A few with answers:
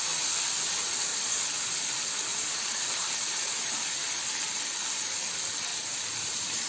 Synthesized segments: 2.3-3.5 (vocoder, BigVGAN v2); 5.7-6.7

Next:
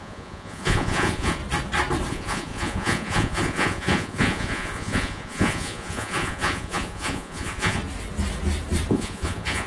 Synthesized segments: 0.0-1.4 (vocoder, Vocos); 2.1-7.8; 8.9-9.7

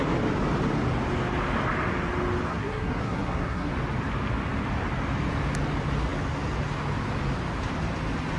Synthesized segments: 2.5-3.7 (codec, SNAC)